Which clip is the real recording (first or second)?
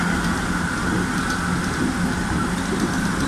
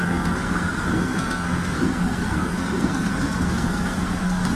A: first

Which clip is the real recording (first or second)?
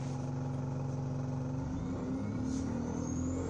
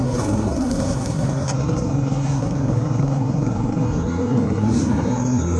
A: first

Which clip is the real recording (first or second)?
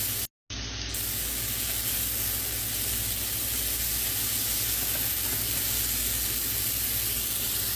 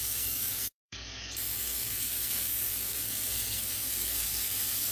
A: first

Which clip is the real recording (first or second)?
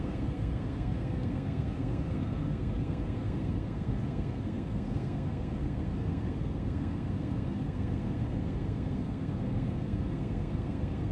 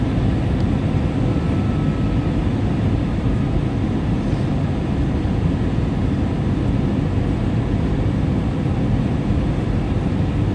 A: second